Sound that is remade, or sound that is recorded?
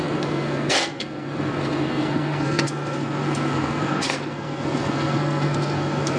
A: remade